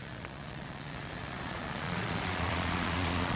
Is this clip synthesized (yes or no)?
yes